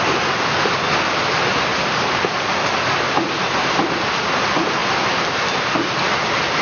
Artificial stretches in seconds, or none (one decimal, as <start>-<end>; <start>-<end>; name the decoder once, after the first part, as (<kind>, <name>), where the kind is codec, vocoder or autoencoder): 1.7-4.1 (vocoder, BigVGAN v2)